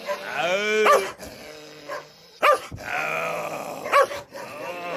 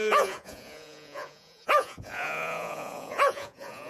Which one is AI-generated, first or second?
second